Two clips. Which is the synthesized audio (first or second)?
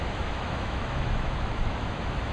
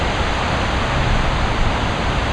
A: first